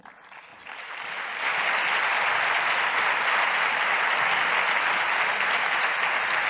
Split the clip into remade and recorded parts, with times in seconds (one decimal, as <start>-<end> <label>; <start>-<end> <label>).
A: 0.0-6.5 recorded